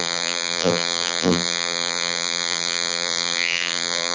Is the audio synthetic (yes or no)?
yes